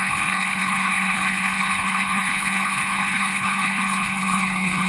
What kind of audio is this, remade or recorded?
remade